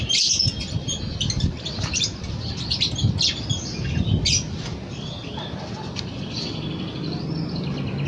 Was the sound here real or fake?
real